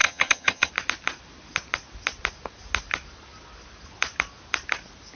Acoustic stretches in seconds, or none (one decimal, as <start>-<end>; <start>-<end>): 0.7-5.1